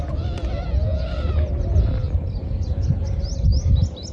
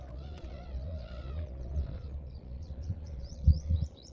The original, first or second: first